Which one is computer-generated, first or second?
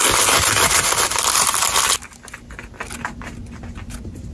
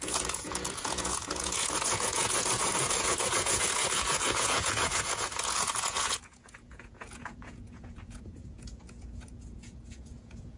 second